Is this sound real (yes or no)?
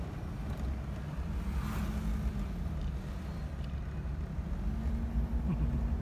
yes